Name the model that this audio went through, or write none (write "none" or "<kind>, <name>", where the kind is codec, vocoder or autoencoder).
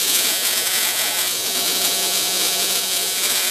vocoder, Vocos